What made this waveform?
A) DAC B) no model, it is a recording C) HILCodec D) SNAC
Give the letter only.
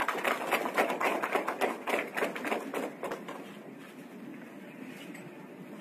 B